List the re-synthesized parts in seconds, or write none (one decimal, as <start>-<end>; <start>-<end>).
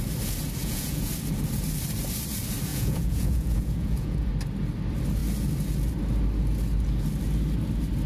0.6-1.1; 2.7-4.3